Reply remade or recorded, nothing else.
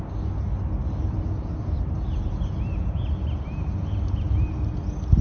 recorded